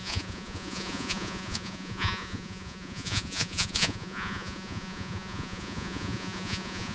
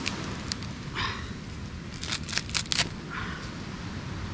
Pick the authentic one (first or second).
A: second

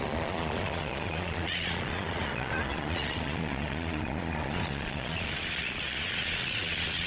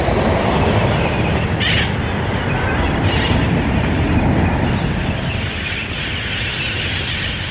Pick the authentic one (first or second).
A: second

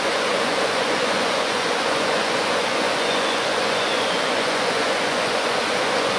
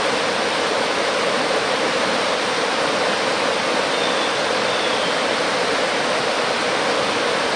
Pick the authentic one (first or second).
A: second